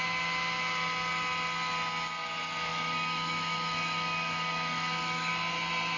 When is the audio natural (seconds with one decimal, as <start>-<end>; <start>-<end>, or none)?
0.0-2.7; 5.3-6.0